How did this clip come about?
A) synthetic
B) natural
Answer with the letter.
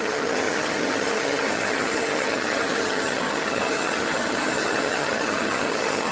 A